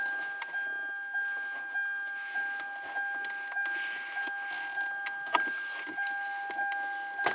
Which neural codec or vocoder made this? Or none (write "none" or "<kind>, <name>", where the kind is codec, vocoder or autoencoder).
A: none